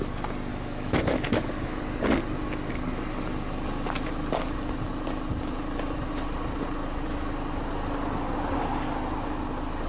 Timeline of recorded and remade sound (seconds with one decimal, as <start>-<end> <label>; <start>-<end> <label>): 0.0-0.5 recorded; 0.5-1.8 remade; 1.8-9.9 recorded